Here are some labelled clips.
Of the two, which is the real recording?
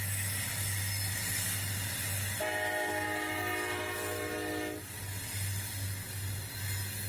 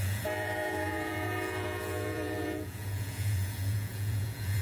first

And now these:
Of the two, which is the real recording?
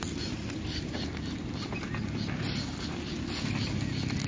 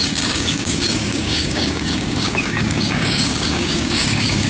first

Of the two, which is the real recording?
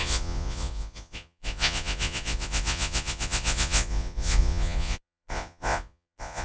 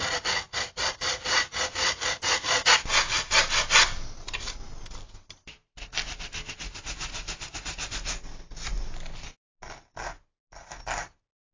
second